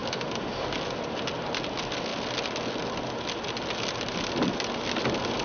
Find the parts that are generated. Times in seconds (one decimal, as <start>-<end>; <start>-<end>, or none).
none